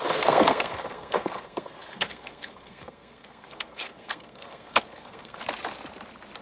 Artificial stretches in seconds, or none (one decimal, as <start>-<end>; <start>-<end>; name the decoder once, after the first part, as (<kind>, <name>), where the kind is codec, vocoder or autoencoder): 0.0-5.4 (codec, SNAC)